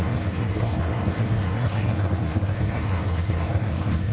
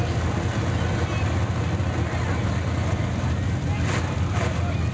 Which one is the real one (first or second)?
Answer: second